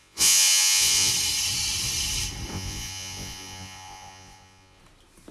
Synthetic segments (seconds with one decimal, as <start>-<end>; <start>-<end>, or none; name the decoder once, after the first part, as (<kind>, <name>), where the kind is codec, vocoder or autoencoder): 0.0-1.1 (vocoder, Vocos); 2.5-4.8